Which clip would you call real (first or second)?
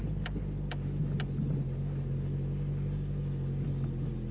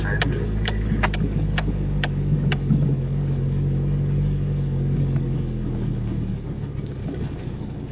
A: first